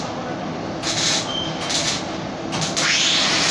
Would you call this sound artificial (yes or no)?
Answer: no